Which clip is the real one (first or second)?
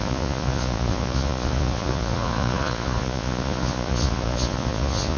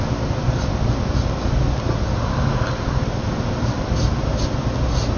second